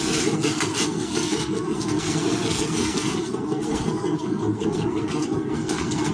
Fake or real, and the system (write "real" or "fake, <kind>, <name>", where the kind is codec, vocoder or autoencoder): fake, codec, SNAC